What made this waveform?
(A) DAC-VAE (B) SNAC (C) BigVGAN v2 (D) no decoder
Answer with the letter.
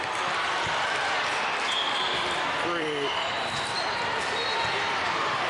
C